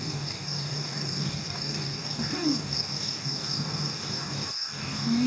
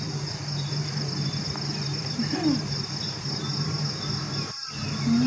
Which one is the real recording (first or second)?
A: second